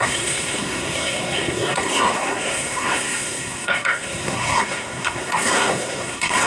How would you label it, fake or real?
fake